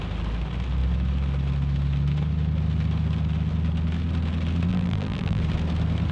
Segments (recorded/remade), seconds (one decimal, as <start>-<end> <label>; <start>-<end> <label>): 0.0-4.7 recorded; 4.7-5.4 remade; 5.4-6.1 recorded